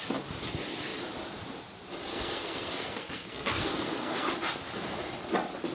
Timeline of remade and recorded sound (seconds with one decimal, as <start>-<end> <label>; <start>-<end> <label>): 0.0-2.1 recorded; 2.1-4.3 remade; 4.3-5.7 recorded